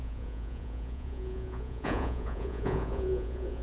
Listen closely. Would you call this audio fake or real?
fake